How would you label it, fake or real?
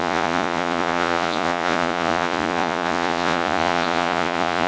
fake